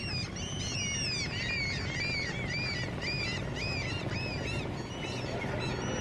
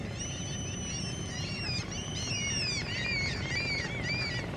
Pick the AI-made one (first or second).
second